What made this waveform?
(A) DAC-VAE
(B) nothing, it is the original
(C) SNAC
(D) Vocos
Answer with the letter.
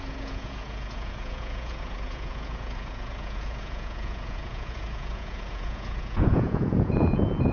D